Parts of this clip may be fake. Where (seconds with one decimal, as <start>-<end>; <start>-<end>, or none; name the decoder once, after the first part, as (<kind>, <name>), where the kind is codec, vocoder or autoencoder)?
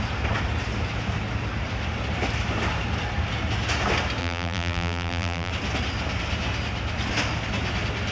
4.2-5.5 (vocoder, BigVGAN v2)